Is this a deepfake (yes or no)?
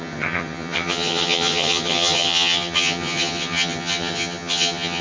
yes